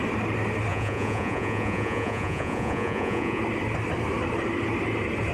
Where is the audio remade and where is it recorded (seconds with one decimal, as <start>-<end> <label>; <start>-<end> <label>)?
0.0-0.7 recorded; 0.7-3.4 remade; 3.4-5.3 recorded